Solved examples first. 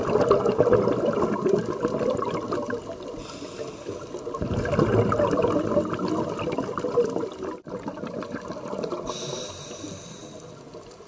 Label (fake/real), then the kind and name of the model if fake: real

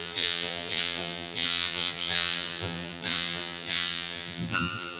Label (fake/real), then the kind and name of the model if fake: fake, vocoder, BigVGAN v2